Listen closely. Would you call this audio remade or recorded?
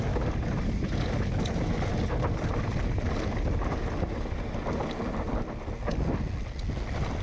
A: recorded